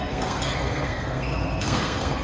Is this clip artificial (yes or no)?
yes